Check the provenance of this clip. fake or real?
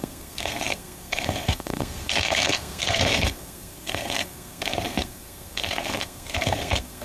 fake